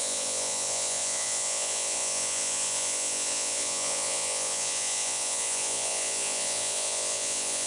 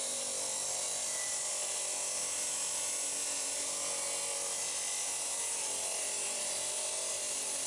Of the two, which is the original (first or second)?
second